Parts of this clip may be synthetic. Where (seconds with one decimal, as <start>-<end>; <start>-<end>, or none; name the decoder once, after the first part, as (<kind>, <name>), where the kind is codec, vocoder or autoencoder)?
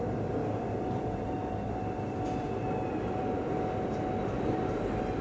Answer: 0.4-3.5 (vocoder, BigVGAN v2)